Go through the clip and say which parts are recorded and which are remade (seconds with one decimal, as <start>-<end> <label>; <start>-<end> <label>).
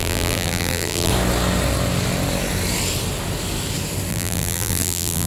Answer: 0.0-1.1 remade; 1.1-4.1 recorded; 4.1-5.3 remade